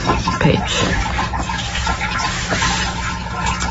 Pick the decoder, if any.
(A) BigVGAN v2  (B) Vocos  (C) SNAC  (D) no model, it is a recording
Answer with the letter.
D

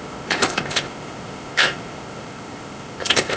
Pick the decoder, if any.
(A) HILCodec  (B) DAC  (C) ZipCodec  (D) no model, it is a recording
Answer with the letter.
C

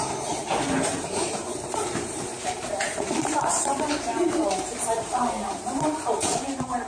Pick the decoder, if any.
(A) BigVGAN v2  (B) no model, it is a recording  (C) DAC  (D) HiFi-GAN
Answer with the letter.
A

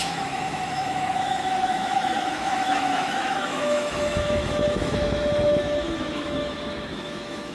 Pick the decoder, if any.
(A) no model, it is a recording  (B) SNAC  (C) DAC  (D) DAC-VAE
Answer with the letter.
D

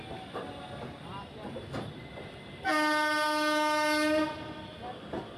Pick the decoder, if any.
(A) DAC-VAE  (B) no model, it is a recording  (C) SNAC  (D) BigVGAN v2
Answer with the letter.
B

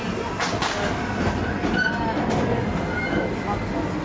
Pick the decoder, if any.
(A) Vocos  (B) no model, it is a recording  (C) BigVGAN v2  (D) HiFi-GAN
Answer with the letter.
B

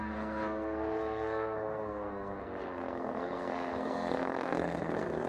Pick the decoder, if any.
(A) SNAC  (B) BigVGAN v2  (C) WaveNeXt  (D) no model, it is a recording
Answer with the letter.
A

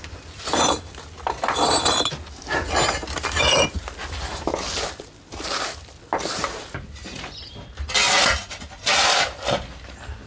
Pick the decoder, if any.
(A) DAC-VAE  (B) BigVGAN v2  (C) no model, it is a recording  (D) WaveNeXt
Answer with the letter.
C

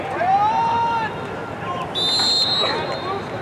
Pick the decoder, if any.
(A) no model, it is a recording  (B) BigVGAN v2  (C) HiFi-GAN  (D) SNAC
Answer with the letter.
A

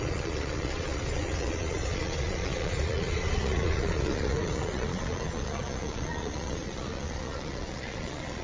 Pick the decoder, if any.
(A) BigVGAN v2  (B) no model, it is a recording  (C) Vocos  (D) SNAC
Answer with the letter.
C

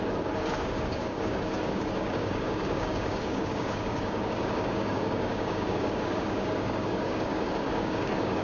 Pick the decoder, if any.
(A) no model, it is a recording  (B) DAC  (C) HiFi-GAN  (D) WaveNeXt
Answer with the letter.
B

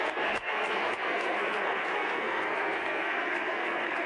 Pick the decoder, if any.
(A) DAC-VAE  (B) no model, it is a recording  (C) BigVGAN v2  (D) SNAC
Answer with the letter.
D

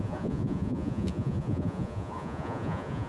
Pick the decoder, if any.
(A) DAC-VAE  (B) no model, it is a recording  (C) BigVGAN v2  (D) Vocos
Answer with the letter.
D